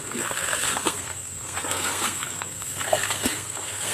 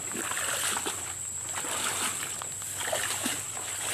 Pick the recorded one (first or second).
second